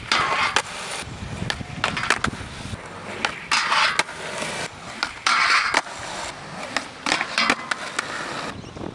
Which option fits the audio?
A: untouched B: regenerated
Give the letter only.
A